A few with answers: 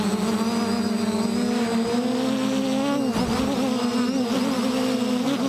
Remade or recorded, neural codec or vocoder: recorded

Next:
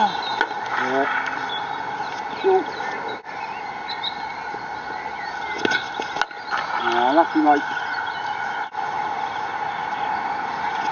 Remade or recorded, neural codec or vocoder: recorded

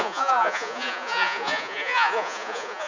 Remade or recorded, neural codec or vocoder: remade, vocoder, Vocos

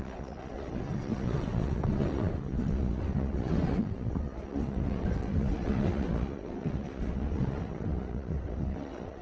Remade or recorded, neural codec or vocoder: remade, vocoder, WaveNeXt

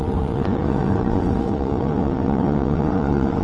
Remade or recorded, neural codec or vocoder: remade, vocoder, WaveNeXt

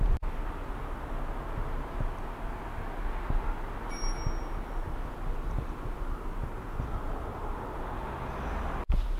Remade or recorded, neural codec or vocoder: recorded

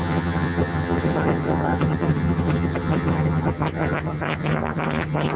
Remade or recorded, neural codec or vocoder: remade, vocoder, HiFi-GAN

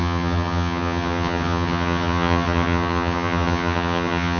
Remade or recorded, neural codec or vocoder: remade, vocoder, HiFi-GAN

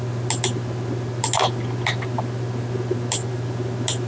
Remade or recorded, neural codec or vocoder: recorded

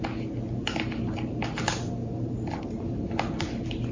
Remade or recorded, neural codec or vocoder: recorded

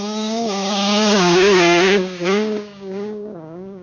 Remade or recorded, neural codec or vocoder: remade, codec, DAC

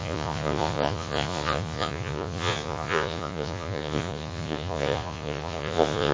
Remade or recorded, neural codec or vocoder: remade, vocoder, Vocos